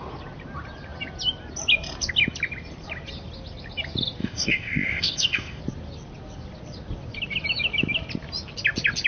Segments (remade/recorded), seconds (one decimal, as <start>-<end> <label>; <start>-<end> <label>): 0.0-4.2 recorded; 4.2-5.6 remade; 5.6-9.1 recorded